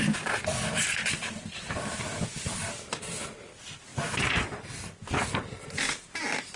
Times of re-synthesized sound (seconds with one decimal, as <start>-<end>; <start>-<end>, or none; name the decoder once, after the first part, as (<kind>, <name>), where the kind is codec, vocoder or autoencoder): 1.0-2.5 (vocoder, BigVGAN v2); 3.9-4.5